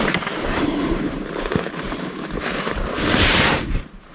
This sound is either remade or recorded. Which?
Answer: remade